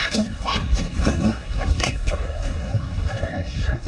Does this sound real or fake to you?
fake